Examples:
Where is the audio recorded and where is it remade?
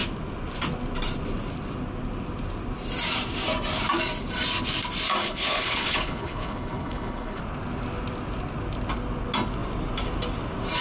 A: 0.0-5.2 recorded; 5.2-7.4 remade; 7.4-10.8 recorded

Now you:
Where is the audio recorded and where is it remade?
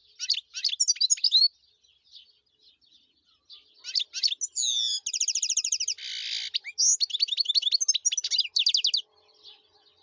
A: 0.0-10.0 recorded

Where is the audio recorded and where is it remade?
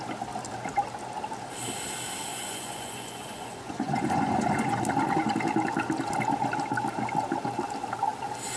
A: 0.0-2.3 recorded; 2.3-4.8 remade; 4.8-8.6 recorded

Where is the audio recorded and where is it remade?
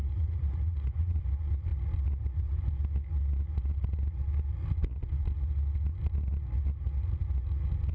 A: 0.0-1.2 remade; 1.2-7.9 recorded